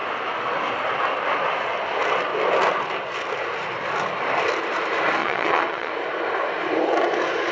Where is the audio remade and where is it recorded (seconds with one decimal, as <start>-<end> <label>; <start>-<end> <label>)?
0.0-5.2 recorded; 5.2-5.9 remade; 5.9-7.5 recorded